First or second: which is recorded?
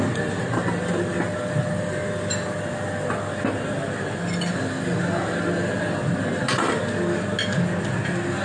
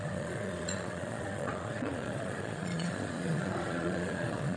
first